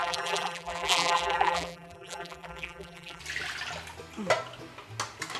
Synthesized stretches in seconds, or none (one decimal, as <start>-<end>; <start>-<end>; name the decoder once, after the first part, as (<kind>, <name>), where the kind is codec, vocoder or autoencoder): 0.0-3.2 (vocoder, BigVGAN v2)